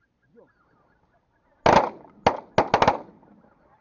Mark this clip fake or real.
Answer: real